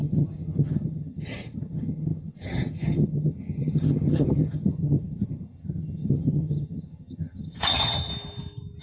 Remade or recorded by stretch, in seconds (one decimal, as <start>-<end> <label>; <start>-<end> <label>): 0.0-8.1 remade; 8.1-8.8 recorded